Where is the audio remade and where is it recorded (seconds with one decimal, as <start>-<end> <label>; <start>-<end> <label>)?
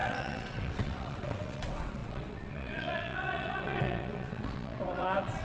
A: 0.0-5.4 remade